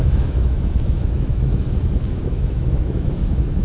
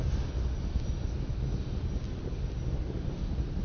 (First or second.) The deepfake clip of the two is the first